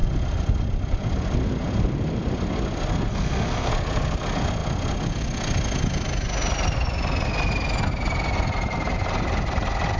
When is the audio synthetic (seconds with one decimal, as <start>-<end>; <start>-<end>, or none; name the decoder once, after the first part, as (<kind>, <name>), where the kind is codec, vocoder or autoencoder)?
3.1-3.7 (codec, SNAC)